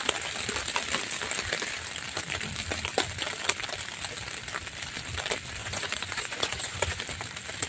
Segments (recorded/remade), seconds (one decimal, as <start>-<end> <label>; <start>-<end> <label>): 0.0-5.6 recorded; 5.6-7.0 remade; 7.0-7.7 recorded